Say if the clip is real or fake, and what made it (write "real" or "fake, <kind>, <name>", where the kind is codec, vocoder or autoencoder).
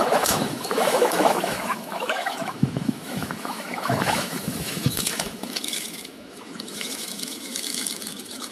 fake, autoencoder, DAC-VAE